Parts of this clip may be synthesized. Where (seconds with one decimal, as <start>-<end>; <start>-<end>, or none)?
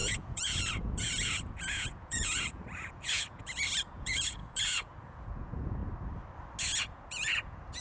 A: 0.0-5.8; 6.8-7.8